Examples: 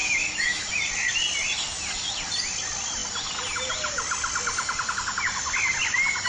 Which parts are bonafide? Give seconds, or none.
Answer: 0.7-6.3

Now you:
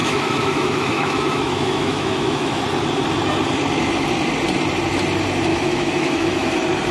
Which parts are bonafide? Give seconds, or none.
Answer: 2.6-5.5; 6.5-6.9

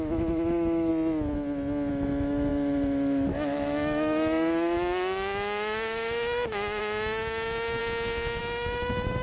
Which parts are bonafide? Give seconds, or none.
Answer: 0.9-1.9; 7.8-8.4

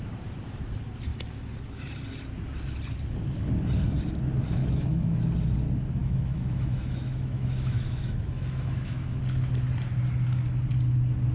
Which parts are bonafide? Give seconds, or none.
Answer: 0.0-4.6; 5.2-6.0; 9.2-11.3

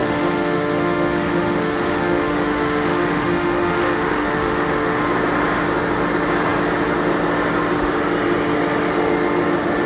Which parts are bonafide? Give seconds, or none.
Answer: 5.0-9.9

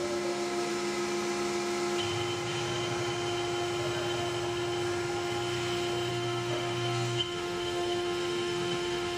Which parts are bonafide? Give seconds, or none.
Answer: 0.0-6.1

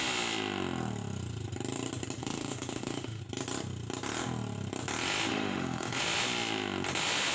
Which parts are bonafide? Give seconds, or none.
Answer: 0.0-2.2; 3.2-5.3; 6.0-7.3

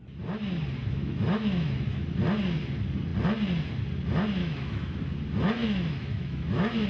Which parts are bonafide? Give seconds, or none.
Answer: 0.0-0.8; 2.0-4.4; 5.0-5.6